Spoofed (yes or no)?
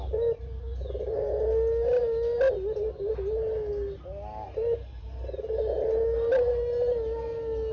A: no